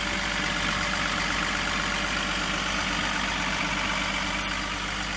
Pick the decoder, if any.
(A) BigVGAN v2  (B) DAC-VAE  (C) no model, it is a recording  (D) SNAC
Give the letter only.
C